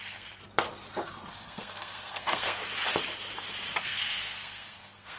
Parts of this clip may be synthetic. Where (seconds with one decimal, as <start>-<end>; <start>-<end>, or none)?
0.0-0.4; 1.3-2.6; 3.8-5.2